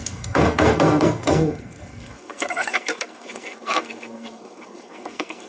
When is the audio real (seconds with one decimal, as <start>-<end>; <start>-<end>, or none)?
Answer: none